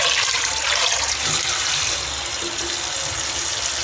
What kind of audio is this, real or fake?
real